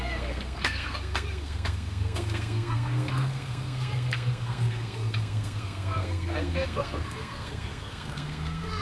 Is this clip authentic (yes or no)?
no